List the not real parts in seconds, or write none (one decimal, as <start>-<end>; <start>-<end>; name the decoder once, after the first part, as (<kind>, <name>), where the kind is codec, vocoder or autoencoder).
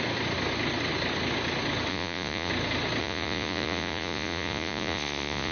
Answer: 1.9-2.5 (vocoder, Vocos); 3.0-5.5